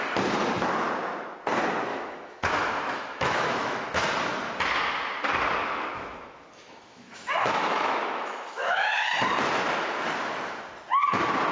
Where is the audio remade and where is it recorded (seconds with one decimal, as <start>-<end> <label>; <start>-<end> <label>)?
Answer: 0.0-1.9 recorded; 1.9-4.1 remade; 4.1-5.6 recorded; 5.6-9.1 remade; 9.1-11.5 recorded

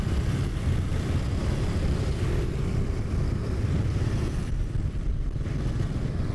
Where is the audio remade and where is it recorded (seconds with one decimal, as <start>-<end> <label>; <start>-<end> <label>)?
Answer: 0.0-6.3 remade

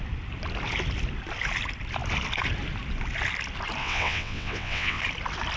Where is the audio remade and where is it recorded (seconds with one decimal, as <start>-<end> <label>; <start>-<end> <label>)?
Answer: 0.0-3.8 recorded; 3.8-5.0 remade; 5.0-5.6 recorded

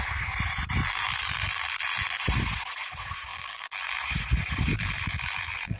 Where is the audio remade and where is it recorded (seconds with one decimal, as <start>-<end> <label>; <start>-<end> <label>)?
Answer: 0.0-0.8 recorded; 0.8-2.2 remade; 2.2-3.3 recorded; 3.3-4.0 remade; 4.0-4.7 recorded; 4.7-5.8 remade